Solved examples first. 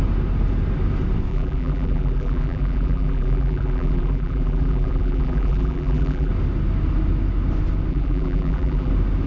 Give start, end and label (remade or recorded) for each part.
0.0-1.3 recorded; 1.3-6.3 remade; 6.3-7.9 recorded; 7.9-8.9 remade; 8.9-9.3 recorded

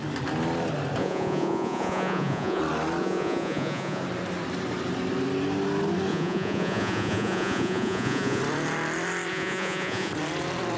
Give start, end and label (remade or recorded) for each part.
0.0-1.0 recorded; 1.0-2.6 remade; 2.6-3.0 recorded; 3.0-4.0 remade; 4.0-6.1 recorded; 6.1-8.4 remade; 8.4-9.3 recorded; 9.3-10.1 remade; 10.1-10.8 recorded

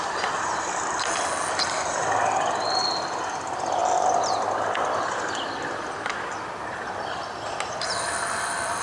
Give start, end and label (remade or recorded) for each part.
0.0-8.8 recorded

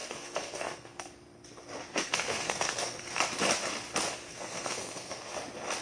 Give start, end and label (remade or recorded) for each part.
0.0-1.1 remade; 1.1-1.9 recorded; 1.9-3.2 remade; 3.2-4.3 recorded; 4.3-5.3 remade; 5.3-5.8 recorded

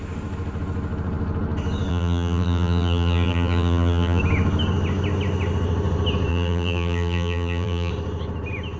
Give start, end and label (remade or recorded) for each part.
0.0-1.9 recorded; 1.9-4.2 remade; 4.2-6.3 recorded; 6.3-7.9 remade; 7.9-8.8 recorded

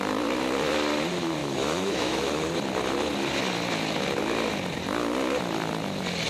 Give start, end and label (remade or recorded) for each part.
0.0-1.4 recorded; 1.4-2.3 remade; 2.3-6.3 recorded

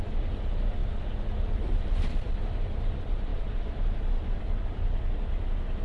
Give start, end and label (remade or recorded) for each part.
0.0-0.8 recorded; 0.8-1.8 remade; 1.8-3.3 recorded; 3.3-4.4 remade; 4.4-5.8 recorded